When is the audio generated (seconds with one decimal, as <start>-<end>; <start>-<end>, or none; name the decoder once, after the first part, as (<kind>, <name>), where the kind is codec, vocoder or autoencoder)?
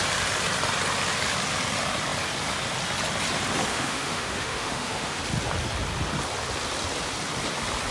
3.7-5.2 (autoencoder, DAC-VAE)